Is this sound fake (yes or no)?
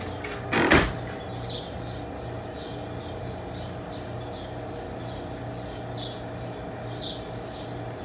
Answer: no